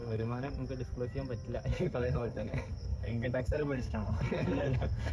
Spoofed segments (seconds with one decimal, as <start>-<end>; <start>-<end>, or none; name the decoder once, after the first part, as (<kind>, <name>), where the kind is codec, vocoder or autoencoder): 0.0-0.5 (codec, SNAC); 1.7-5.1